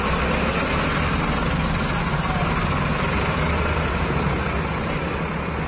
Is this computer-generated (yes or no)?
no